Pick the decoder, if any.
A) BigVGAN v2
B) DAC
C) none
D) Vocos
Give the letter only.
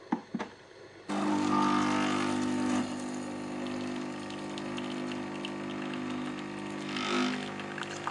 C